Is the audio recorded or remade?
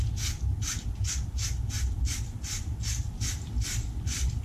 recorded